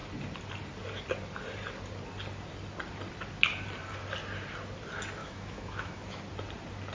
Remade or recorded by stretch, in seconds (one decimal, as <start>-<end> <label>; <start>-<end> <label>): 0.0-5.2 recorded; 5.2-6.2 remade; 6.2-6.9 recorded